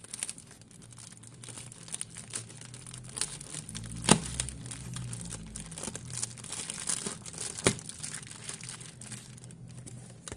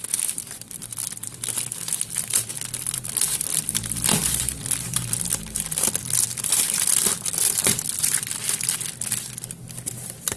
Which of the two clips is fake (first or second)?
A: second